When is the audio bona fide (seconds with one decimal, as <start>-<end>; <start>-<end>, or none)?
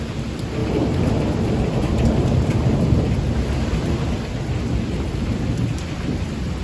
0.0-0.6; 2.8-6.6